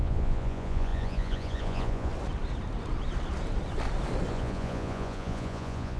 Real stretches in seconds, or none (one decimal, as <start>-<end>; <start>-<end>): 2.1-4.3

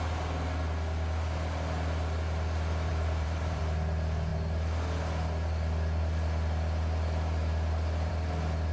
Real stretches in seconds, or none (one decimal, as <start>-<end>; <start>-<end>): 0.0-2.9; 3.6-8.7

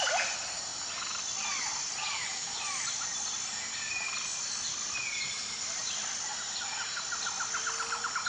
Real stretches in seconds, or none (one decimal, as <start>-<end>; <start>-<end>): 0.0-8.3